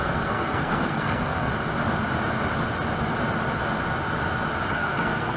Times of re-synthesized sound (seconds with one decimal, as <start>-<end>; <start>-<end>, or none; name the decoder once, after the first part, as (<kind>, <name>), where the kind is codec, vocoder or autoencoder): 0.0-1.5 (codec, SNAC); 4.7-5.4